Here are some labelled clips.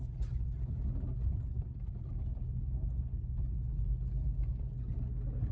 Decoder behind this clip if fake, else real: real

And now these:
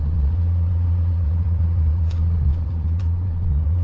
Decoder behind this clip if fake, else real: fake, vocoder, Vocos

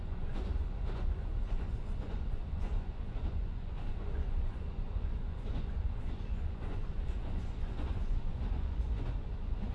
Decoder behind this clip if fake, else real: fake, vocoder, Vocos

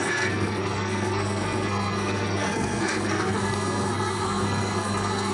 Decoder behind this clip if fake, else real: fake, codec, SNAC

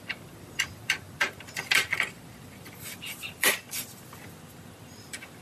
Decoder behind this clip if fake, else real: fake, vocoder, BigVGAN v2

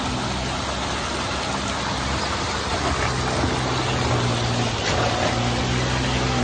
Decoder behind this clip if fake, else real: real